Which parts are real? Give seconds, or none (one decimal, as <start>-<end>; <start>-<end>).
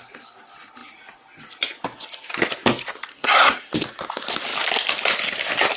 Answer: 0.0-3.1; 3.7-5.8